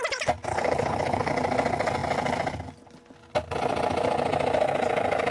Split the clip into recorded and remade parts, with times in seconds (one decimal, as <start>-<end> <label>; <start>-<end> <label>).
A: 0.0-0.5 recorded; 0.5-1.3 remade; 1.3-5.3 recorded